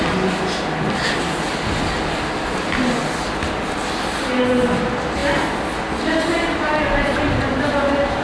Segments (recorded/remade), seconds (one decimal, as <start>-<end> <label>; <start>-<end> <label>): 0.0-8.2 recorded